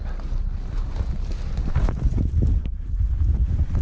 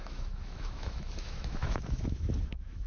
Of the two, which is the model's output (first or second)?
second